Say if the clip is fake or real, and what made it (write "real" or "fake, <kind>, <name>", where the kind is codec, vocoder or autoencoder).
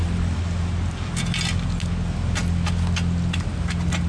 real